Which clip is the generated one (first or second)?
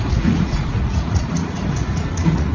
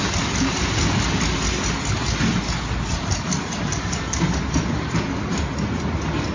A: first